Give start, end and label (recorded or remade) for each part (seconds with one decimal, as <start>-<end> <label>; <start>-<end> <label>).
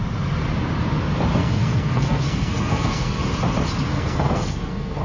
0.0-1.3 recorded; 1.3-3.2 remade; 3.2-3.9 recorded; 3.9-5.0 remade